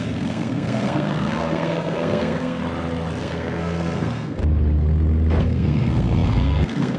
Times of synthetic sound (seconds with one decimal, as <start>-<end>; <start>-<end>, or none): 0.0-2.6; 3.2-4.4; 5.4-7.0